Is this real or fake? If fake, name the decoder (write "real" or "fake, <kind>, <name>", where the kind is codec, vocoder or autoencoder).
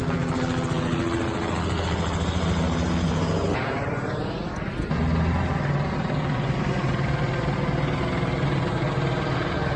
real